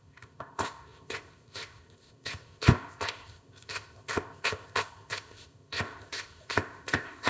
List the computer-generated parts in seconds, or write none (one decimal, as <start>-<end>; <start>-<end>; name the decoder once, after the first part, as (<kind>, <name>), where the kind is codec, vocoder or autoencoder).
0.0-7.3 (codec, ZipCodec)